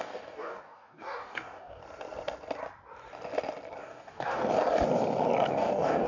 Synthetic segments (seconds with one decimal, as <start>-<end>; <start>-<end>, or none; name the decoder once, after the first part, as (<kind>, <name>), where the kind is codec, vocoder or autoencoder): 0.0-1.8 (codec, DAC); 3.8-4.4; 5.5-6.1